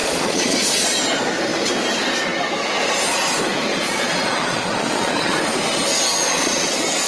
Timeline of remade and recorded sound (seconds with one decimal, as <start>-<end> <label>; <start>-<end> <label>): 0.0-1.0 remade; 1.0-3.7 recorded; 3.7-5.4 remade; 5.4-6.1 recorded; 6.1-7.1 remade